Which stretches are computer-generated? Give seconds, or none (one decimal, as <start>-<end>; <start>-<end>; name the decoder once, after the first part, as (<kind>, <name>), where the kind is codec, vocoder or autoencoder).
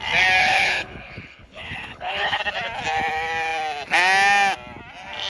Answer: 0.4-2.4 (codec, HILCodec)